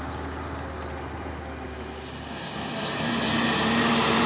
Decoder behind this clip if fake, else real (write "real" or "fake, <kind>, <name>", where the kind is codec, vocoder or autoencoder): real